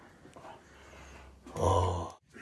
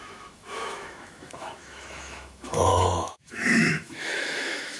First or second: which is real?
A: first